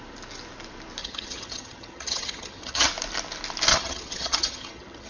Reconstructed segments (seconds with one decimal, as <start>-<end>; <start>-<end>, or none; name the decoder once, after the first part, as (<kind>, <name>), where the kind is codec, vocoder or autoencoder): 1.0-2.9 (vocoder, HiFi-GAN); 3.7-5.1